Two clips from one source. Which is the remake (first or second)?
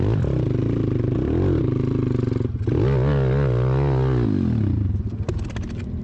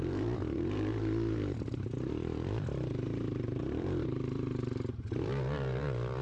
second